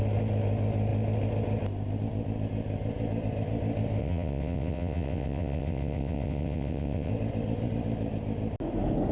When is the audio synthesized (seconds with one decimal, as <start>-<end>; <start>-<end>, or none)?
4.0-7.1

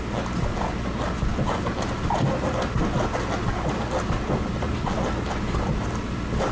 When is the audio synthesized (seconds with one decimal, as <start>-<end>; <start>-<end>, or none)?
none

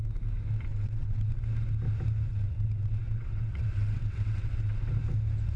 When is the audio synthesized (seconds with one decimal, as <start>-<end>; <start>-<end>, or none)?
0.7-1.3; 2.3-4.9

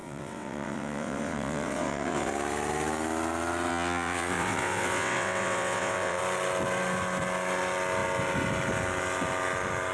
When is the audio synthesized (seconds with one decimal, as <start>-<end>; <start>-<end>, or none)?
0.0-2.3; 3.7-6.2

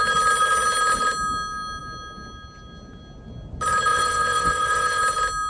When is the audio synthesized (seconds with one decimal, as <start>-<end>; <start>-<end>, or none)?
3.9-5.0

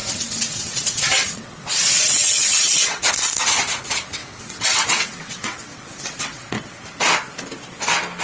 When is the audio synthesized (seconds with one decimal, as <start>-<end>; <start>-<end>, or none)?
0.0-3.1; 4.2-6.8

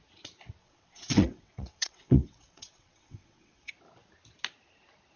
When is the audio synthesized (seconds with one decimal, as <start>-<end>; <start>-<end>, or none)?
0.6-3.7